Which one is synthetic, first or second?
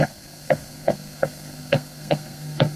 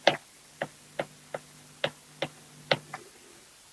first